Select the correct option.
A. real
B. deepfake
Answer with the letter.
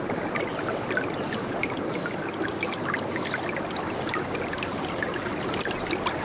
A